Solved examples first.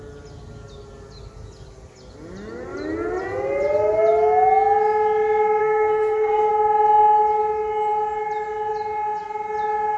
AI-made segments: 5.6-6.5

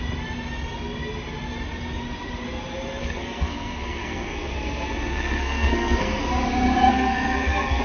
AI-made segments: 3.0-6.2; 6.9-7.8

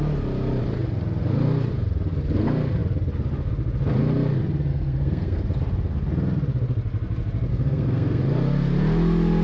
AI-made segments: 4.7-5.4; 7.5-8.2

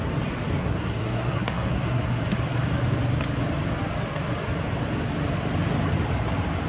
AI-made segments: 0.6-2.2

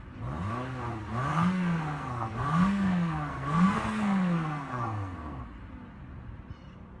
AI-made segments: 1.3-5.4

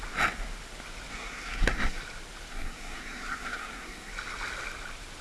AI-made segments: 1.1-2.0; 2.5-4.1

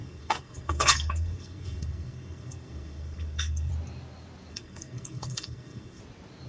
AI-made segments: 0.0-3.7; 4.5-6.0

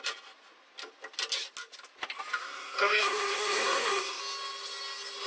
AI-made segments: 2.4-4.2